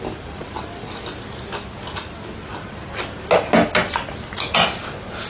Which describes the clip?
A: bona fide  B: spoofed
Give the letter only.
A